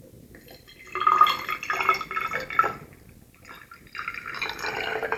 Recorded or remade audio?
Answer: recorded